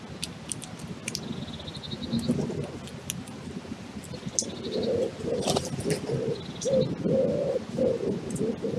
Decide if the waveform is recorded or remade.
recorded